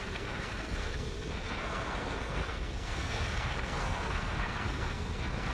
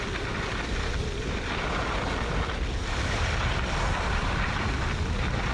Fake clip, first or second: first